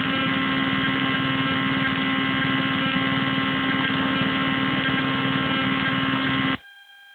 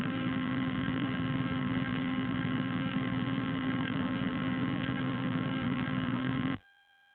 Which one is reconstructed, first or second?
second